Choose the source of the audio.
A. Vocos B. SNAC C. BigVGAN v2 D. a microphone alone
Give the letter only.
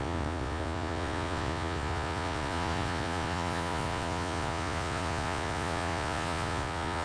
A